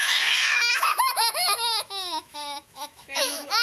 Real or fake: fake